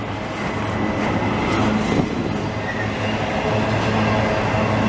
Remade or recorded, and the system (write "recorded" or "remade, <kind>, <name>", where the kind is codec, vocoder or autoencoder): recorded